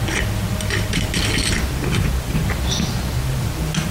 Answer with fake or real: real